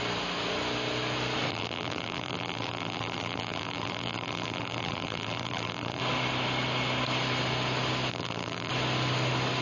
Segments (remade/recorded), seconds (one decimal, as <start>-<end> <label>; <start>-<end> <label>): 0.0-1.5 recorded; 1.5-6.0 remade; 6.0-8.1 recorded; 8.1-8.7 remade; 8.7-9.6 recorded